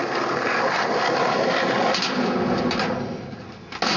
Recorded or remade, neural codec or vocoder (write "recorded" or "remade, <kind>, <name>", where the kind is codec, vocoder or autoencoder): recorded